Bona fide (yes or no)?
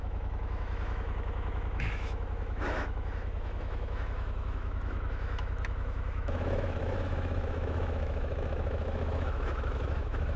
no